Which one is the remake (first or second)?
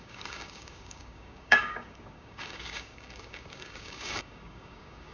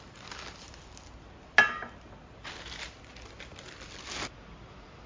first